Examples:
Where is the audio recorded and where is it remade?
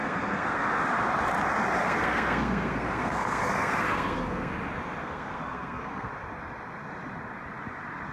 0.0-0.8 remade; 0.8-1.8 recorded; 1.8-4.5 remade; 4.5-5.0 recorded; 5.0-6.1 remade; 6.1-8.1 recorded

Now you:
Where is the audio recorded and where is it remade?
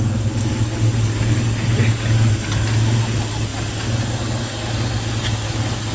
0.0-5.9 recorded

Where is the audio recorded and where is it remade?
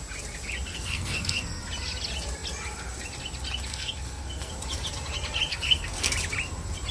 0.0-0.7 recorded; 0.7-1.6 remade; 1.6-3.7 recorded; 3.7-4.5 remade; 4.5-5.5 recorded; 5.5-6.1 remade; 6.1-6.9 recorded